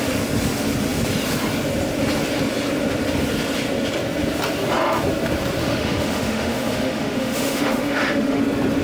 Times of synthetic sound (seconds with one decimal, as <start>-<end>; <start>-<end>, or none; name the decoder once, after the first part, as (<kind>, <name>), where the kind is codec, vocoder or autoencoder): 5.6-8.4 (autoencoder, DAC-VAE)